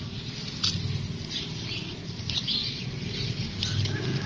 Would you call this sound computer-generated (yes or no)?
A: no